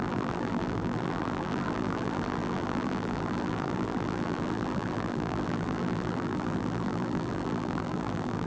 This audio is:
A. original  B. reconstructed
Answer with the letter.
B